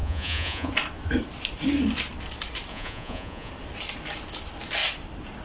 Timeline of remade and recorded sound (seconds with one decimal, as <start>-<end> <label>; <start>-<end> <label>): 0.0-0.7 remade; 0.7-2.7 recorded; 2.7-3.5 remade; 3.5-5.4 recorded

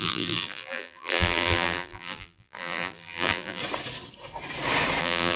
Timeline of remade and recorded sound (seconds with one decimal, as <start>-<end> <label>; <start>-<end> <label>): 0.0-3.6 remade; 3.6-5.0 recorded; 5.0-5.4 remade

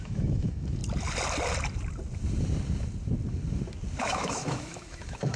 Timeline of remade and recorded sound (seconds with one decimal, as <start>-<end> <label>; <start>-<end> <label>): 0.0-0.8 remade; 0.8-4.0 recorded; 4.0-5.4 remade

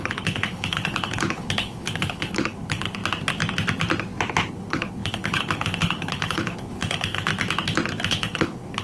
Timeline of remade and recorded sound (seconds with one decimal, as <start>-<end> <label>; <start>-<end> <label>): 0.0-3.0 remade; 3.0-4.5 recorded; 4.5-7.3 remade; 7.3-8.1 recorded; 8.1-8.8 remade

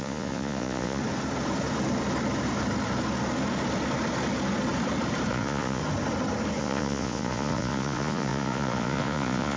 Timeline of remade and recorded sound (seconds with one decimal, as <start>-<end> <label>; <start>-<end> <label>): 0.0-1.0 remade; 1.0-5.3 recorded; 5.3-5.8 remade; 5.8-6.6 recorded; 6.6-9.6 remade

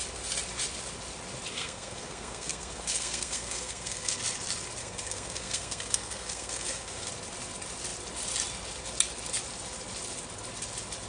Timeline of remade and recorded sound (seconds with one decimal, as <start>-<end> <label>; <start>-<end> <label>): 0.0-1.5 recorded; 1.5-4.2 remade; 4.2-4.8 recorded; 4.8-7.1 remade; 7.1-11.1 recorded

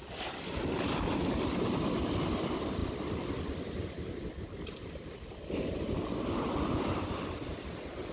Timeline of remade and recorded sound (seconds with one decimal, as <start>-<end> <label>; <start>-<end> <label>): 0.0-8.1 recorded

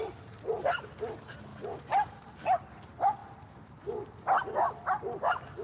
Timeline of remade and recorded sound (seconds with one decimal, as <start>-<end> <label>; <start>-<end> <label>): 0.0-1.5 recorded; 1.5-2.8 remade; 2.8-5.6 recorded